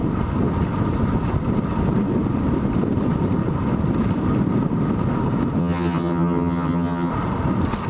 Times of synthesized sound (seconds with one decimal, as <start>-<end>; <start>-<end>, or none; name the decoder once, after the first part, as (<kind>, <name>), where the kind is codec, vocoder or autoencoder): 5.6-7.1 (vocoder, HiFi-GAN)